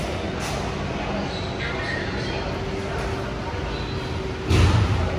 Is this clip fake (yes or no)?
no